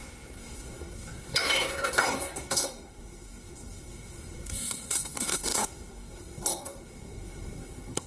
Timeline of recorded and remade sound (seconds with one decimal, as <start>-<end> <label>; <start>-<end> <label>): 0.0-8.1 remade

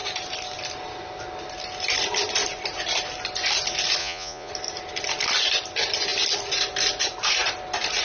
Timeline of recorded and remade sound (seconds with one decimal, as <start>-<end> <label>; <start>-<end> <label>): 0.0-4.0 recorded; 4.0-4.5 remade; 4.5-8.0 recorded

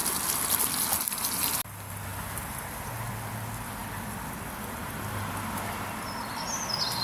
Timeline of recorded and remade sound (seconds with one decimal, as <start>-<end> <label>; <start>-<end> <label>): 0.0-7.0 recorded

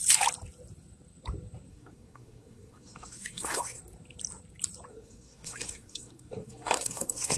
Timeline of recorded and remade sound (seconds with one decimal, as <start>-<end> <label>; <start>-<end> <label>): 0.0-1.7 recorded; 1.7-3.8 remade; 3.8-4.9 recorded; 4.9-7.4 remade